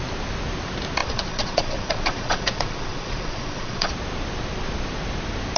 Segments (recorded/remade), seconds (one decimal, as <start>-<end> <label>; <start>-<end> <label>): 0.0-1.0 recorded; 1.0-3.9 remade; 3.9-5.6 recorded